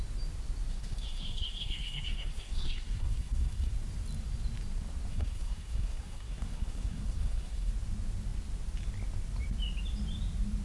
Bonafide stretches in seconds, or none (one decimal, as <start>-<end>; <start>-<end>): 0.0-0.7; 3.7-5.1; 7.7-10.6